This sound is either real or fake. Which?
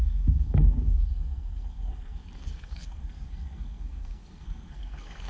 fake